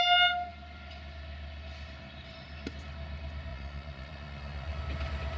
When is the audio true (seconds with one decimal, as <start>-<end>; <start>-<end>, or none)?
0.0-3.5; 4.8-5.4

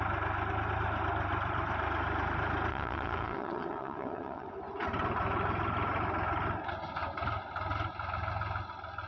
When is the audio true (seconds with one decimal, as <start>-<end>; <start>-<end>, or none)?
0.0-2.7; 4.5-9.1

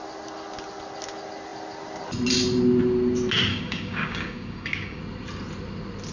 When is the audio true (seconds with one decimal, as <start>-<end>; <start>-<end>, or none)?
0.0-3.5; 5.0-6.1

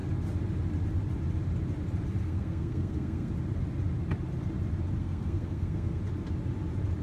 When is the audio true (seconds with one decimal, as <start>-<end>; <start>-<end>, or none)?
0.0-2.2; 3.3-5.0; 6.0-7.0

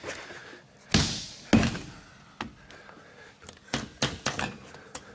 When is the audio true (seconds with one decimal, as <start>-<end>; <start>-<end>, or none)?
0.0-5.1

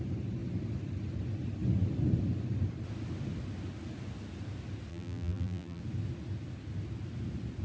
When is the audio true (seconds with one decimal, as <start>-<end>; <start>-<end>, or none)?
0.0-4.9; 5.8-7.6

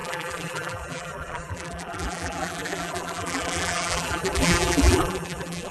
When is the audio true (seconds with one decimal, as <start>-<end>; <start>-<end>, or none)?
none